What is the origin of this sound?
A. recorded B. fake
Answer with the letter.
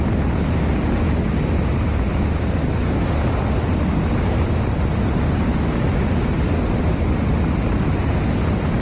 A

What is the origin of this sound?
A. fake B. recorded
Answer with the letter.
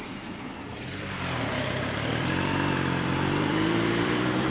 A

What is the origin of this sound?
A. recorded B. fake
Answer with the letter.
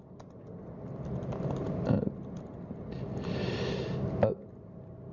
A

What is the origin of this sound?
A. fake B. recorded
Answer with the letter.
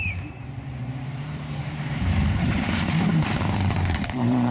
A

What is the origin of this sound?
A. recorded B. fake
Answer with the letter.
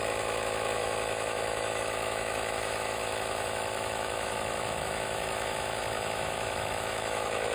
B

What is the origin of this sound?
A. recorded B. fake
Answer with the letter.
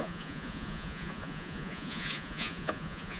B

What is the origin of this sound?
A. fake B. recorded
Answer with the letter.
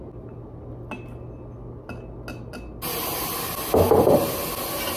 B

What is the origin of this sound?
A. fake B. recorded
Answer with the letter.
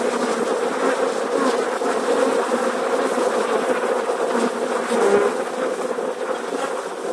B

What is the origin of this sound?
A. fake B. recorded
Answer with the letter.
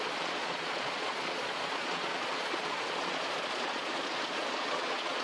A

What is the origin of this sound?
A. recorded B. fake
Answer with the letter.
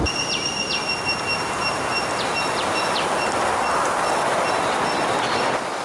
A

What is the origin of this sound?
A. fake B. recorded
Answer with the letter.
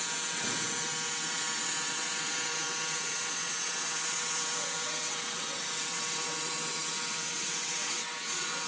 A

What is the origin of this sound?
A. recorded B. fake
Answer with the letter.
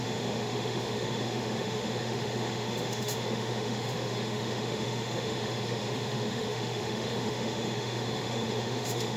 B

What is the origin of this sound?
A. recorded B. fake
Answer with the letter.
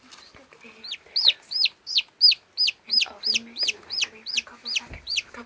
A